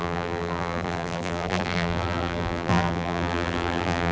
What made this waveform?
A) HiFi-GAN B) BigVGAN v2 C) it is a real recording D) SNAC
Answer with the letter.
B